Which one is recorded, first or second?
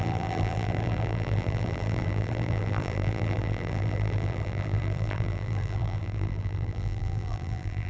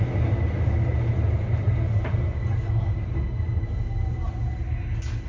second